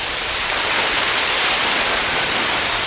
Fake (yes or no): no